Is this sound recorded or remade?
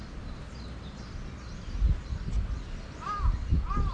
recorded